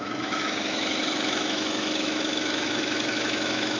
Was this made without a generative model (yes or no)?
no